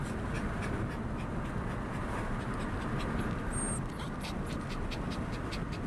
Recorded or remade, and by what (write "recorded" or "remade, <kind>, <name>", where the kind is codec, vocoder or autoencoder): recorded